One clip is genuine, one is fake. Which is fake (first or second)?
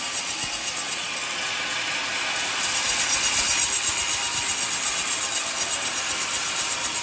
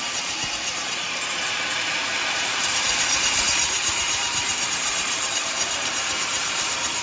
second